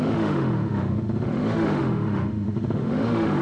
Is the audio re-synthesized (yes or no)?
yes